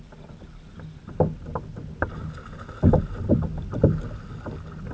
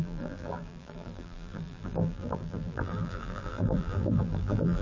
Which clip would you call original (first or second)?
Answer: first